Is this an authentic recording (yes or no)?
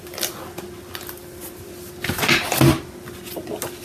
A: yes